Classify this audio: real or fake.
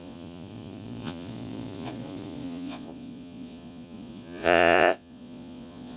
fake